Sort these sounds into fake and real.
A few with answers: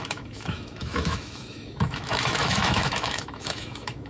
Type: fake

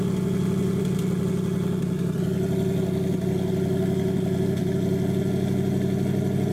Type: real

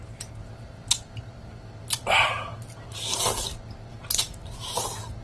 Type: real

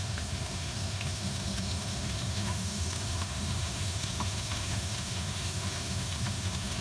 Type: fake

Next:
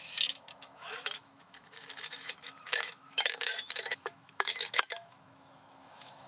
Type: fake